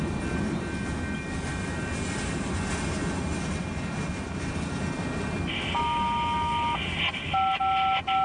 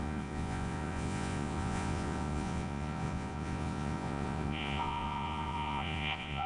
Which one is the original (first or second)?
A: first